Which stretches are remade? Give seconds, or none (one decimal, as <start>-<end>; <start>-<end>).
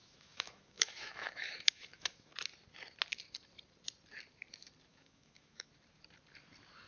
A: 0.0-2.3; 4.9-5.7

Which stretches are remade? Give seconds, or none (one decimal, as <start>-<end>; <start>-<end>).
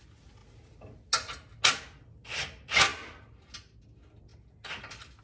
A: none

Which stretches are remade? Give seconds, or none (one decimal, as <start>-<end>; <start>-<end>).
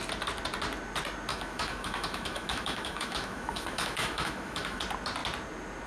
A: 1.3-4.8